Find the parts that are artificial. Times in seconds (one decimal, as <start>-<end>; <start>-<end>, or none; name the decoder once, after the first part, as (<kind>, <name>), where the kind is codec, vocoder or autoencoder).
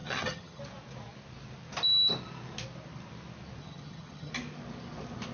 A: 0.0-0.6 (vocoder, HiFi-GAN); 3.6-4.3